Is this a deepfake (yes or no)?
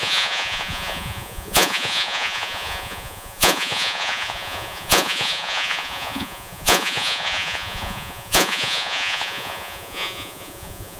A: yes